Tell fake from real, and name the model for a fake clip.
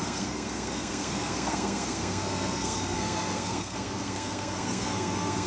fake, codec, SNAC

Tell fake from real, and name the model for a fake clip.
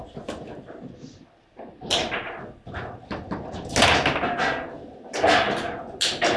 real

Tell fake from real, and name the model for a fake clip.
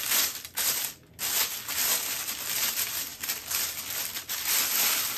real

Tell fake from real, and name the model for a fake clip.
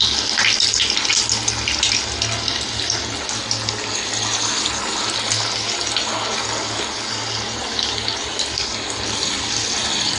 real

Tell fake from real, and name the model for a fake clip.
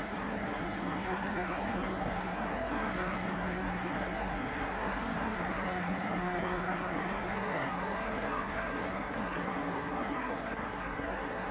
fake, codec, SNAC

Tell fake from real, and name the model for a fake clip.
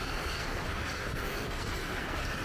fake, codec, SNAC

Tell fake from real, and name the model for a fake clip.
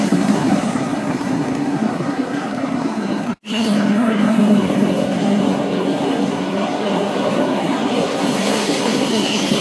fake, codec, SNAC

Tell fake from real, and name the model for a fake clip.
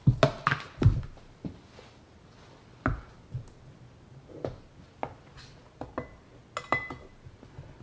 real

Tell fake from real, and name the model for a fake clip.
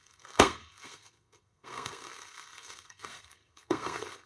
fake, codec, SNAC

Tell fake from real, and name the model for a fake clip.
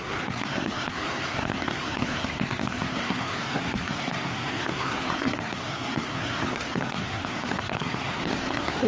fake, codec, SNAC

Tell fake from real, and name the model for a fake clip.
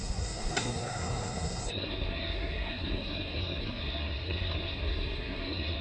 fake, codec, SNAC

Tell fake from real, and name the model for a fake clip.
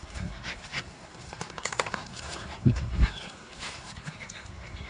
fake, codec, SNAC